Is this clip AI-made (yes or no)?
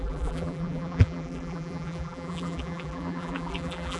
yes